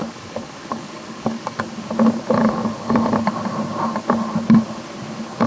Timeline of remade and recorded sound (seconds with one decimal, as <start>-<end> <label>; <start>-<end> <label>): 0.0-1.6 remade; 1.6-2.4 recorded; 2.4-3.1 remade; 3.1-5.5 recorded